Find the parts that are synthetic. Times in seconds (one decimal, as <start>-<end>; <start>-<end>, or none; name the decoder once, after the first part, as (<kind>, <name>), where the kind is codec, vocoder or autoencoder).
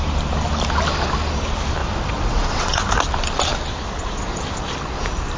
1.8-2.9 (vocoder, WaveNeXt)